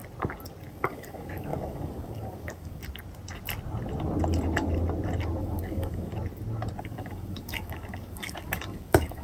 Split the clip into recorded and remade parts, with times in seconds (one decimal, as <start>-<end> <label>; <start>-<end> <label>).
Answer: 0.0-0.7 recorded; 0.7-2.8 remade; 2.8-5.4 recorded; 5.4-6.1 remade; 6.1-6.8 recorded; 6.8-9.2 remade